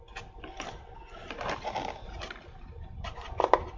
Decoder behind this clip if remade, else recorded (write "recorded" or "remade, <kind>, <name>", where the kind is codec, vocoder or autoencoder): recorded